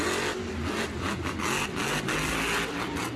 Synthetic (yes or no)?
no